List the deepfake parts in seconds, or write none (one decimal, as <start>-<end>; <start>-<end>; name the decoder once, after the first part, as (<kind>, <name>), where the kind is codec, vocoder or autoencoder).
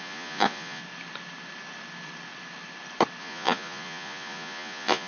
0.0-0.8 (vocoder, Vocos); 3.2-5.1